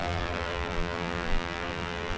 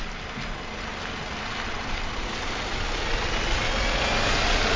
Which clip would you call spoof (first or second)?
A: first